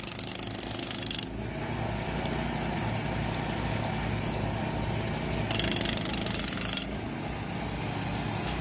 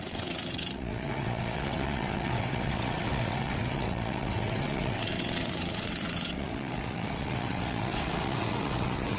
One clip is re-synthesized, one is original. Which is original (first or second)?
first